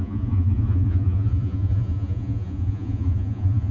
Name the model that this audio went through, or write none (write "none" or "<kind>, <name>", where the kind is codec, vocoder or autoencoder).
vocoder, Vocos